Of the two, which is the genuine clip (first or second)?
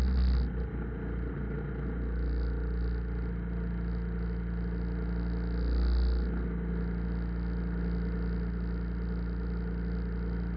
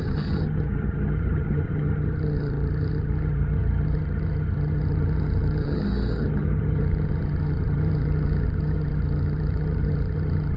first